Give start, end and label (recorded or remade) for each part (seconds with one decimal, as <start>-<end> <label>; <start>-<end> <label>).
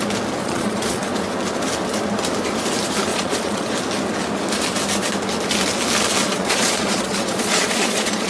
0.0-0.4 recorded; 0.4-1.1 remade; 1.1-3.1 recorded; 3.1-3.7 remade; 3.7-6.2 recorded; 6.2-8.3 remade